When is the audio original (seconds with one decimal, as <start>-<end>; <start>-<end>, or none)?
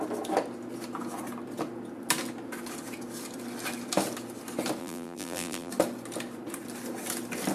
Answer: 0.0-4.8; 5.7-7.5